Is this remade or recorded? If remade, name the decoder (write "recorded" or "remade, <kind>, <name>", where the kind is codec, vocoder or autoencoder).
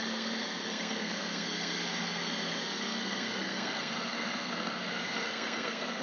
remade, codec, SNAC